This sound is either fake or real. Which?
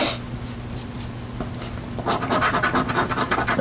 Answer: real